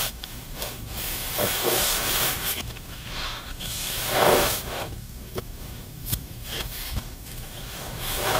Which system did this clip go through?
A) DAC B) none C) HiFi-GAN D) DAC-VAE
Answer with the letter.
A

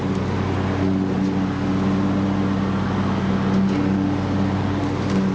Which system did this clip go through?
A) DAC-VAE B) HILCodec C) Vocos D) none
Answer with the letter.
D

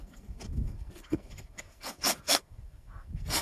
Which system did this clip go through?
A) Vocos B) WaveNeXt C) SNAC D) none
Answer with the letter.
C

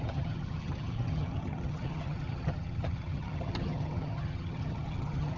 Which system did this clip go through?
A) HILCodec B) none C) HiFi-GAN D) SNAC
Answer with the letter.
C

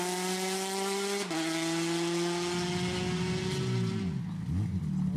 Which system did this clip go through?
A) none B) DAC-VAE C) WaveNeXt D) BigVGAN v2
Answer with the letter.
A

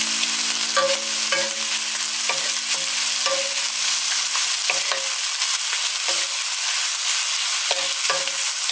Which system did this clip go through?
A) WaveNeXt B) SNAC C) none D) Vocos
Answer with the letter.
C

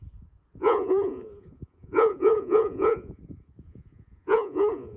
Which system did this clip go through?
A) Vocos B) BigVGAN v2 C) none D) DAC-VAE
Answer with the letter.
A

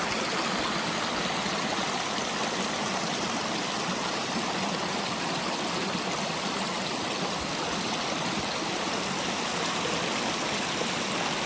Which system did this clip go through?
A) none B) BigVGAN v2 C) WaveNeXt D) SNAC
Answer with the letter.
A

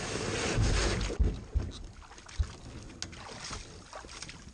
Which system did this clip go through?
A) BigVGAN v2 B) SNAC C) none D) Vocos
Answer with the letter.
C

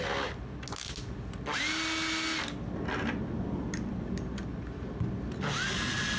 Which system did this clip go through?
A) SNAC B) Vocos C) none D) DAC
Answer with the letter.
C